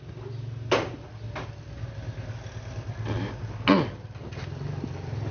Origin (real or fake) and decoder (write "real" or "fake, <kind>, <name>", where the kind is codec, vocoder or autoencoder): real